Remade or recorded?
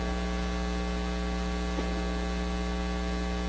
recorded